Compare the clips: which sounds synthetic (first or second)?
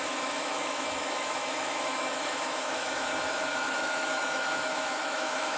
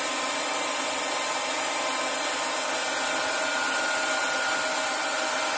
first